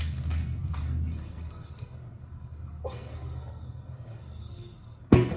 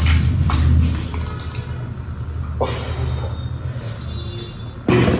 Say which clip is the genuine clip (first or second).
second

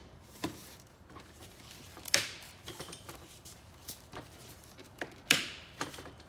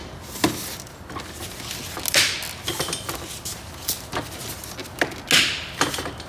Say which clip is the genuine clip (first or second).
second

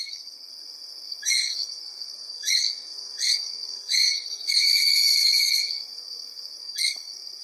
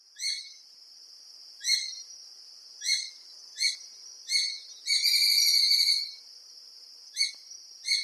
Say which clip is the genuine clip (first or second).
second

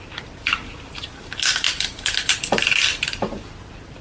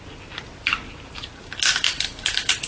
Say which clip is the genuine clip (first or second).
second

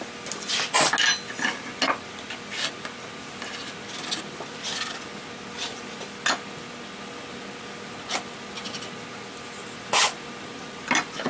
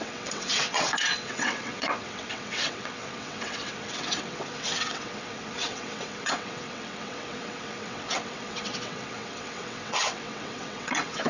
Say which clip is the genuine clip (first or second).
first